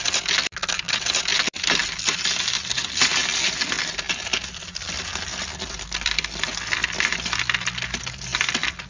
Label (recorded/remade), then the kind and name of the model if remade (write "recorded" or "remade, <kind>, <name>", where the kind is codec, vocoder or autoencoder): recorded